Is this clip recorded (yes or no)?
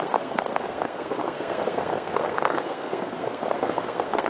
no